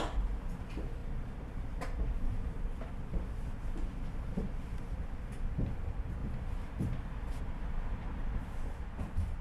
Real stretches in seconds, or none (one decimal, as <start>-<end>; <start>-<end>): 0.0-1.0; 2.9-6.2; 7.4-9.4